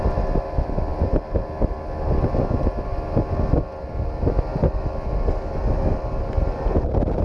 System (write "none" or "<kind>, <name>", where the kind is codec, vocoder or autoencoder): none